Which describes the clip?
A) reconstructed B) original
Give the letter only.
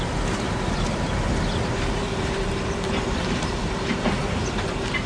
A